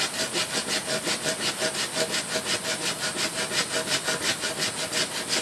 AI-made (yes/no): no